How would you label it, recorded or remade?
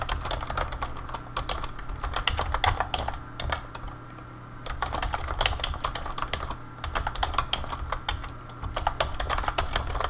recorded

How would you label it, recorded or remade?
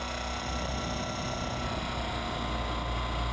recorded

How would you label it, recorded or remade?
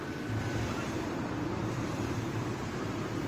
recorded